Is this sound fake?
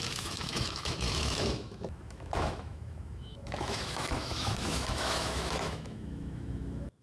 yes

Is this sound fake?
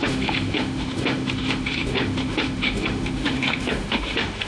yes